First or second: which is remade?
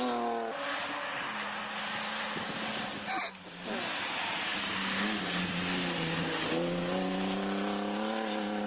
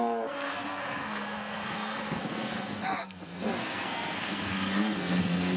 second